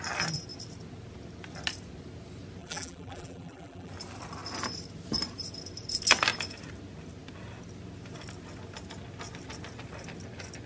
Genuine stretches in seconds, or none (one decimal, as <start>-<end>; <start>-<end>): 0.0-2.6; 3.9-10.7